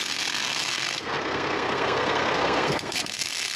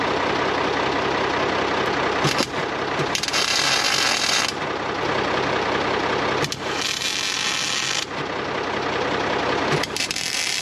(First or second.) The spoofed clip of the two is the first